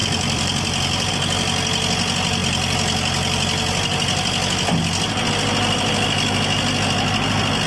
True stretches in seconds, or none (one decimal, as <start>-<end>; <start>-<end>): 1.1-7.7